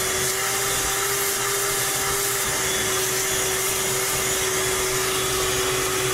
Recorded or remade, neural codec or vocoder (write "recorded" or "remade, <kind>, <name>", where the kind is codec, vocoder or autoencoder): recorded